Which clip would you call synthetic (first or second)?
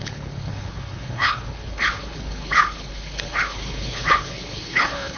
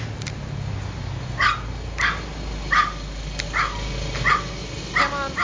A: first